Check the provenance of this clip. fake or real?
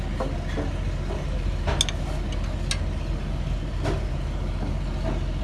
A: real